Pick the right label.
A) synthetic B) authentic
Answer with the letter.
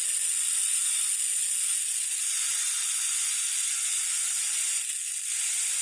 B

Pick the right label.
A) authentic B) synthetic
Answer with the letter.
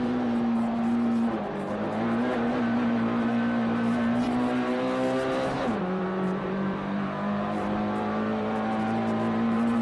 B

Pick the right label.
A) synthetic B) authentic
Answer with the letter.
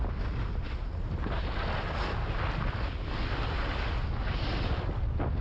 B